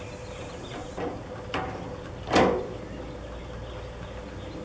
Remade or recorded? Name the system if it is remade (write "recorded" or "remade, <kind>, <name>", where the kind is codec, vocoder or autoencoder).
recorded